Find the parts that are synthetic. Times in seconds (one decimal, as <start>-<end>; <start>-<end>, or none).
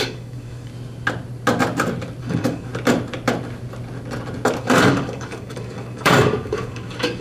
0.0-0.7; 2.2-2.7; 4.6-7.2